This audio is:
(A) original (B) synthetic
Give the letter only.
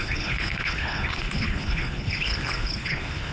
B